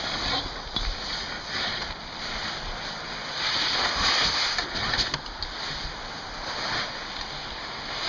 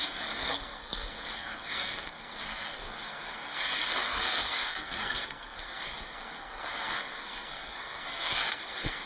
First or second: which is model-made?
second